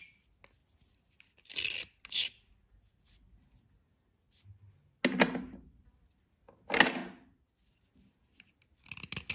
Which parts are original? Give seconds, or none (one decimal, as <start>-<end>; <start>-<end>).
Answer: 0.0-9.3